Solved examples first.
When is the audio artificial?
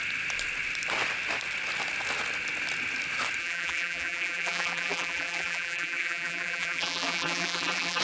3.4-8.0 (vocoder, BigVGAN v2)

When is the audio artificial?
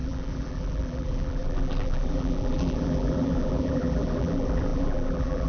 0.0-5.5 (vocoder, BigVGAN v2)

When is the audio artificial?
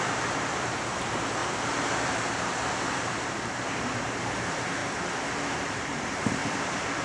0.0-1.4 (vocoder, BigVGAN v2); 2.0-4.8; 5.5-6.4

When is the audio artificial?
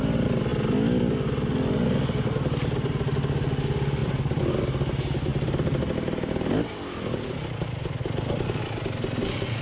4.0-4.6 (vocoder, BigVGAN v2); 5.3-8.6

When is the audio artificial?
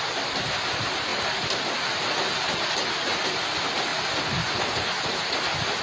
none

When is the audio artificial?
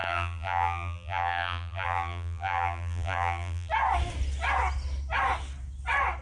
0.0-3.7 (vocoder, BigVGAN v2)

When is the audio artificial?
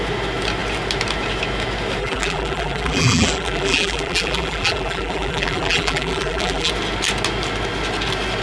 2.0-6.7 (vocoder, BigVGAN v2)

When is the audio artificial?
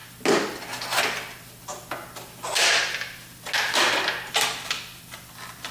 none